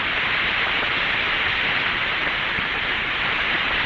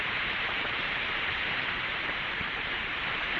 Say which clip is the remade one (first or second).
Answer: second